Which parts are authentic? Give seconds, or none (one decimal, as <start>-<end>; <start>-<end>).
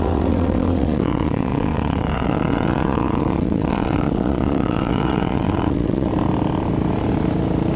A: 6.1-7.8